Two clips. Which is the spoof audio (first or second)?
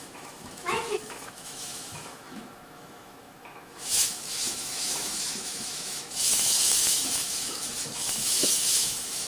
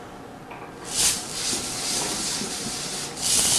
first